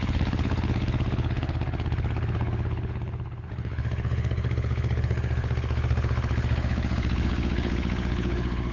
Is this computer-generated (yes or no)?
yes